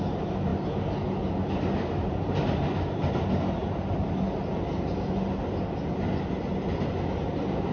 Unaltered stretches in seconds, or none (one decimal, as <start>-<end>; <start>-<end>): 0.0-7.7